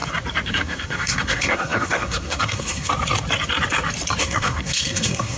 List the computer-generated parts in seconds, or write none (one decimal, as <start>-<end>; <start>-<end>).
0.5-2.9; 4.2-5.4